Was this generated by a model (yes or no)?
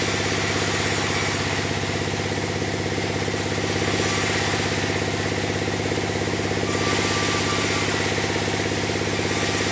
no